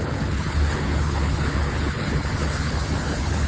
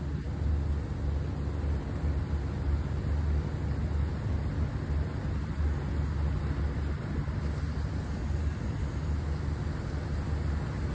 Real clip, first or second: second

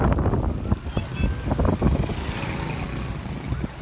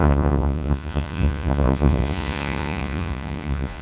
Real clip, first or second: first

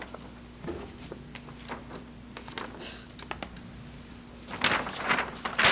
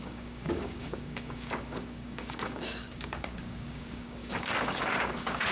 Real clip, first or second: first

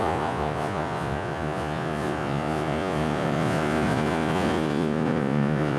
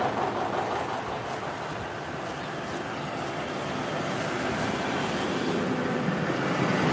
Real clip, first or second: second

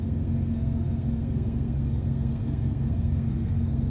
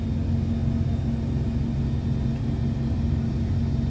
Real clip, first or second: second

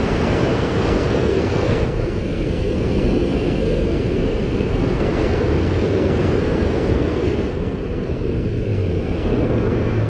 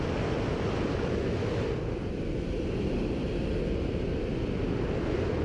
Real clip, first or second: second